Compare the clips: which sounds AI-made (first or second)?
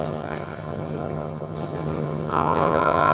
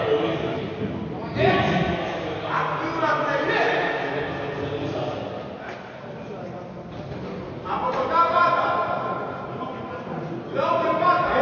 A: first